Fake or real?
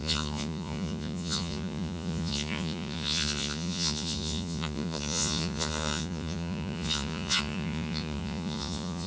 fake